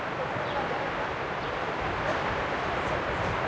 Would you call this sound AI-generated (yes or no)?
no